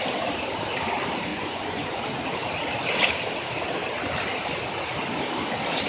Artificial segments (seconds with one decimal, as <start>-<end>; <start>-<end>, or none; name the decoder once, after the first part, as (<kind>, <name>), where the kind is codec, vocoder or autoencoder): 1.3-2.0 (vocoder, Vocos)